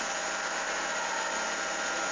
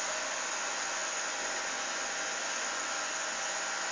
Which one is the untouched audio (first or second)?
first